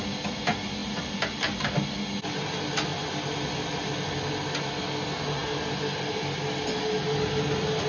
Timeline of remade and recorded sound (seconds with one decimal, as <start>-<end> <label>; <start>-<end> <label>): 0.0-7.9 recorded